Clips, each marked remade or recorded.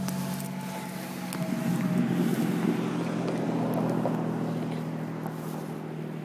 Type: recorded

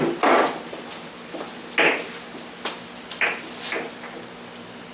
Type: recorded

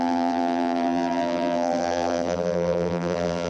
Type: remade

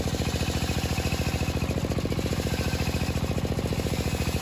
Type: recorded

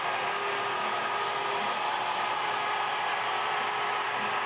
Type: recorded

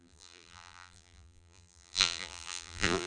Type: remade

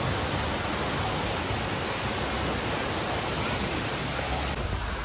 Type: recorded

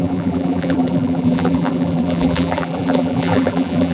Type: remade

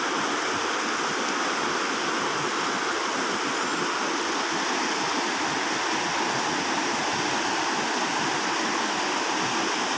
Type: recorded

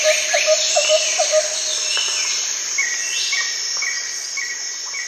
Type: remade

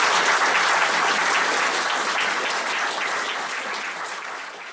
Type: recorded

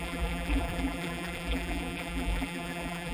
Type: remade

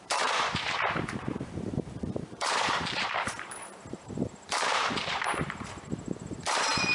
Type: remade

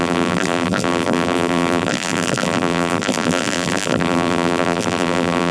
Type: remade